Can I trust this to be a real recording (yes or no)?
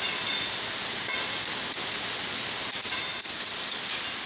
yes